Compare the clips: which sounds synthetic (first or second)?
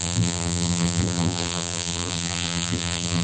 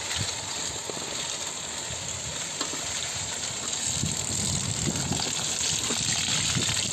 first